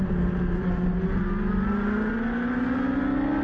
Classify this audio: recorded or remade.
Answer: recorded